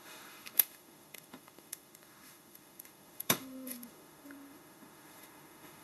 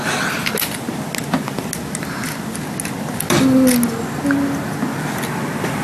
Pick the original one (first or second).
second